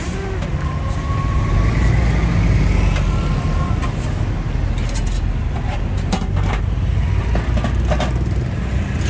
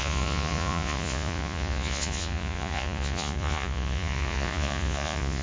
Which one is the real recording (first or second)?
first